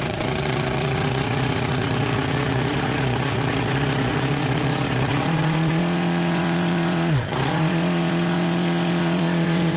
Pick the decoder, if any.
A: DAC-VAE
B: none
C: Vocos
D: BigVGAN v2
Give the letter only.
C